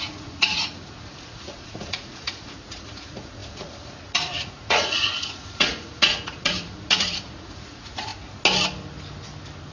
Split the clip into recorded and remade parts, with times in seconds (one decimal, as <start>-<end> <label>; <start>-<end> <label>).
0.0-8.1 remade; 8.1-9.7 recorded